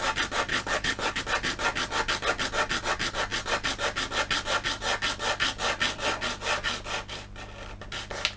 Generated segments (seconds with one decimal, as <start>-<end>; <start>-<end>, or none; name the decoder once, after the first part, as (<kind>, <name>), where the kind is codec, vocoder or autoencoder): 0.5-1.2 (codec, HILCodec)